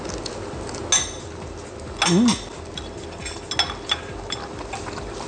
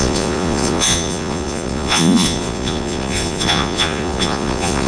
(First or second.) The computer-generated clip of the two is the second